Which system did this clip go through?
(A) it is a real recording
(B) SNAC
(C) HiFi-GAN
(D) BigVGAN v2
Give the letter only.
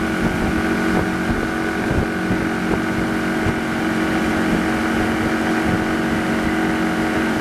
A